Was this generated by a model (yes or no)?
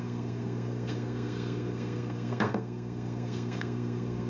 yes